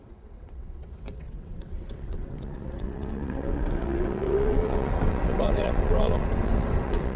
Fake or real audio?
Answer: fake